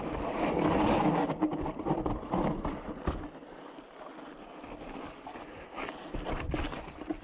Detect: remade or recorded recorded